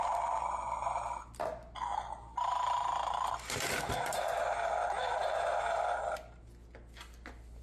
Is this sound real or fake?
real